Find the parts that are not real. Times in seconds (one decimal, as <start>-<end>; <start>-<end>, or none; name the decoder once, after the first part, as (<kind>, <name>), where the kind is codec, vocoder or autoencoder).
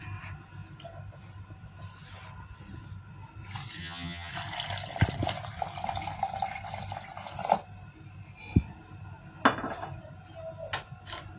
3.8-4.3 (vocoder, HiFi-GAN)